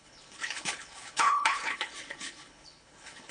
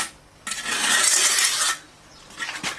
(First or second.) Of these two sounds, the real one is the second